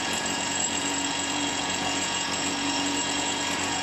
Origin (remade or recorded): remade